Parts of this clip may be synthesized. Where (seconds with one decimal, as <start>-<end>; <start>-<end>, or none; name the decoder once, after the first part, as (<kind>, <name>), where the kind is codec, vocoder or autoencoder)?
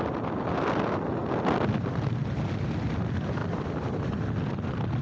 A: 3.4-4.0 (vocoder, BigVGAN v2)